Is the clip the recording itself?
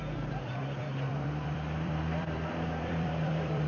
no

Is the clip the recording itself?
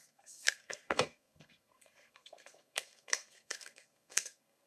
no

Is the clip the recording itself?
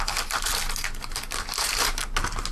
yes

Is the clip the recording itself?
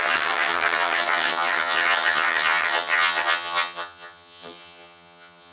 no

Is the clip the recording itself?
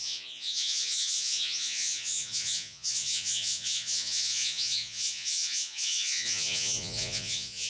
no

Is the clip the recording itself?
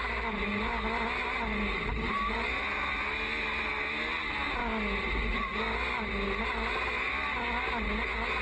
yes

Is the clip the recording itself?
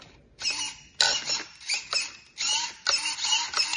yes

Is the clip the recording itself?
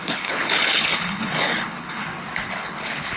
no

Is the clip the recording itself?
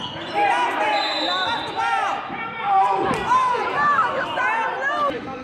yes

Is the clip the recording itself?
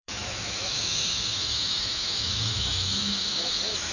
no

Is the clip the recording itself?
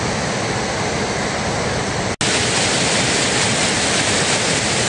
yes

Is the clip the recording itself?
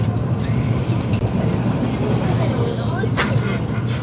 yes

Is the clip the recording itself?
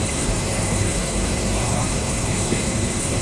no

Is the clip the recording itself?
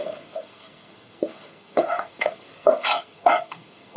no